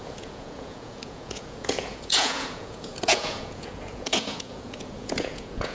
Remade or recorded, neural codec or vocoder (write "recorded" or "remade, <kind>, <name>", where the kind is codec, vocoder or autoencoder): remade, vocoder, Vocos